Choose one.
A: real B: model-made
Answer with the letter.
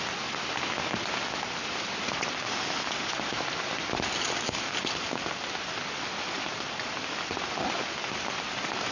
A